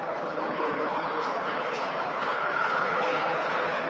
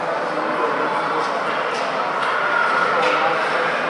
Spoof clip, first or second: first